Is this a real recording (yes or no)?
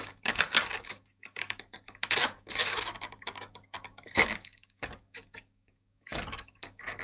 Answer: no